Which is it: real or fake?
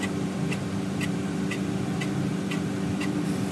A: real